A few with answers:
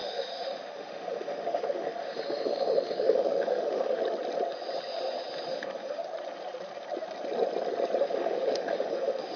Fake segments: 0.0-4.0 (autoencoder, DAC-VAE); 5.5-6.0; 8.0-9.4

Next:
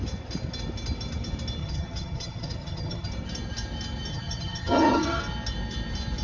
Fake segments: 1.6-3.1 (vocoder, HiFi-GAN); 4.1-5.2

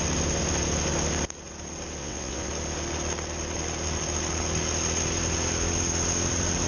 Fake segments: 2.0-2.5 (vocoder, WaveNeXt)

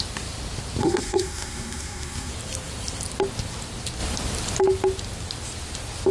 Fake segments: 0.8-2.3 (codec, SNAC)